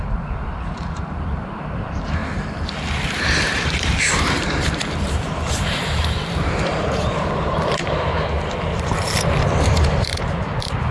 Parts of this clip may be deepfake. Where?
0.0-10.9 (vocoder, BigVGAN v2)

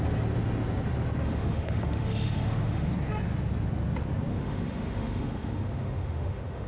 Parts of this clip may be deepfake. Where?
1.2-2.9 (autoencoder, DAC-VAE); 4.3-6.7

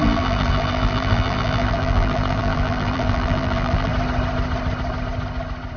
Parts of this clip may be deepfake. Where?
0.0-3.9 (vocoder, BigVGAN v2)

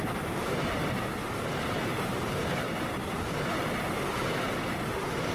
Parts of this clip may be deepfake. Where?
0.0-0.8 (vocoder, BigVGAN v2); 1.3-3.0; 3.7-5.3

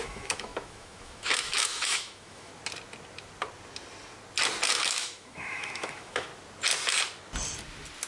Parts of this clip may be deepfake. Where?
0.0-2.5 (autoencoder, DAC-VAE); 4.7-6.3

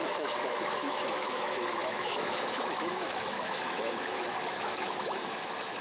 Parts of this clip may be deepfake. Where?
0.0-5.8 (autoencoder, DAC-VAE)

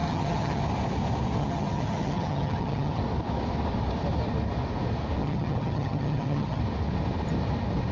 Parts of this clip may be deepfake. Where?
0.0-0.6 (vocoder, HiFi-GAN); 1.4-3.0; 5.2-6.6

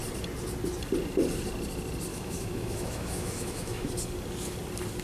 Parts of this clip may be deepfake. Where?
2.1-3.9 (autoencoder, DAC-VAE)